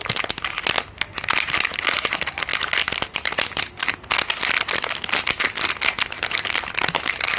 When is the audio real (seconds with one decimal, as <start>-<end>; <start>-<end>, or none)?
0.0-7.4